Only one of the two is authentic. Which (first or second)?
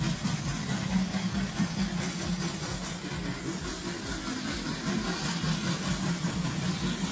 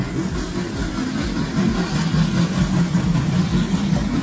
second